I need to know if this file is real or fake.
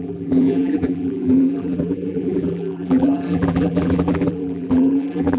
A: fake